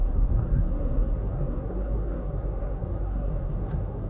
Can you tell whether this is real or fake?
fake